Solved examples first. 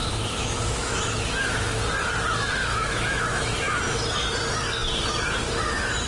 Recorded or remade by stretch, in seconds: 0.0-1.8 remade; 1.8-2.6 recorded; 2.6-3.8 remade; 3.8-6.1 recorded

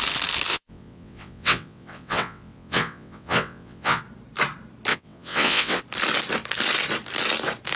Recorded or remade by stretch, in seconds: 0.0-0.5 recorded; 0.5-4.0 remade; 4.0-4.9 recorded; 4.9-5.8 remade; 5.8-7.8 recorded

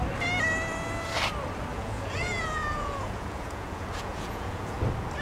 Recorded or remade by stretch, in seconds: 0.0-1.7 recorded; 1.7-4.8 remade; 4.8-5.2 recorded

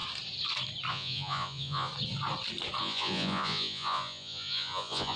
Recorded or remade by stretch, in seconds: 0.0-0.9 recorded; 0.9-1.9 remade; 1.9-2.8 recorded; 2.8-5.2 remade